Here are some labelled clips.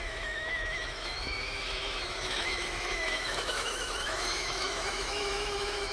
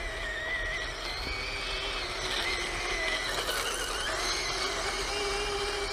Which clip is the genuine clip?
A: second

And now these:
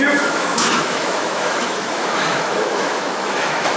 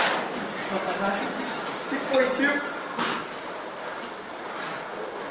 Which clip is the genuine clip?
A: second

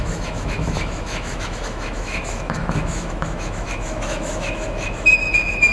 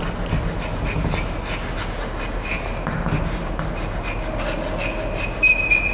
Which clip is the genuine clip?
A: second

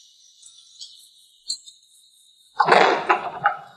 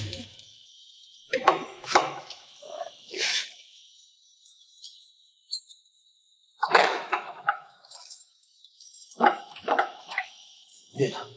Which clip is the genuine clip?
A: first